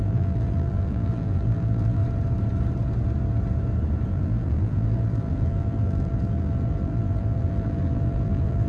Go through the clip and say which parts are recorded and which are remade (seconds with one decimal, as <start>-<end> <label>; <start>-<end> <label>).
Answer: 0.0-2.0 remade; 2.0-4.1 recorded; 4.1-8.7 remade